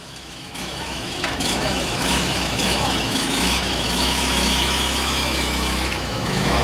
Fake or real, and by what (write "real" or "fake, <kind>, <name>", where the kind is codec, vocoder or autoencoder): fake, autoencoder, DAC-VAE